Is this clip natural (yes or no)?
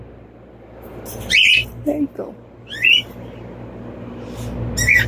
yes